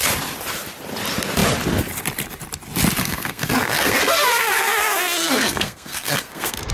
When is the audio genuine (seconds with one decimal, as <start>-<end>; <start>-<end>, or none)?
0.0-3.0